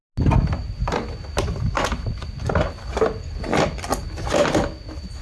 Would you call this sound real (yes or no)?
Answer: yes